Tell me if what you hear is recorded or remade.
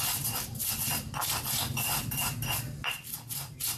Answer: recorded